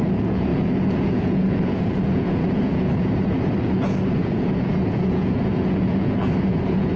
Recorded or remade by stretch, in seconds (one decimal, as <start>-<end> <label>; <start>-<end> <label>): 0.0-7.0 remade

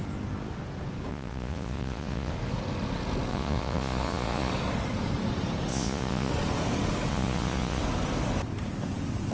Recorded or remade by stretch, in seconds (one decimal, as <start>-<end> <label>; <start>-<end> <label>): 0.0-1.1 recorded; 1.1-2.3 remade; 2.3-3.3 recorded; 3.3-4.5 remade; 4.5-5.7 recorded; 5.7-6.3 remade; 6.3-7.1 recorded; 7.1-7.8 remade; 7.8-9.3 recorded

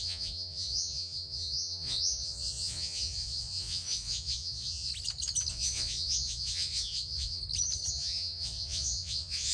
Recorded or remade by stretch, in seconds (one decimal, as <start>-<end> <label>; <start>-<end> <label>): 0.0-4.9 remade; 4.9-5.5 recorded; 5.5-7.4 remade; 7.4-7.9 recorded; 7.9-9.5 remade

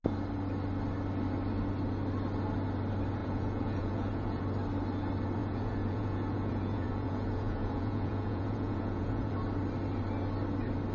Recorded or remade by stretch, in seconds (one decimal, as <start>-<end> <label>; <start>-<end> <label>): 0.0-3.2 recorded; 3.2-4.4 remade; 4.4-5.4 recorded; 5.4-9.3 remade; 9.3-10.9 recorded

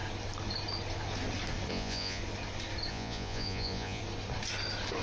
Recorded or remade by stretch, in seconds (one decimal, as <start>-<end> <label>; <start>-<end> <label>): 0.0-1.7 recorded; 1.7-2.2 remade; 2.2-2.9 recorded; 2.9-4.0 remade; 4.0-5.0 recorded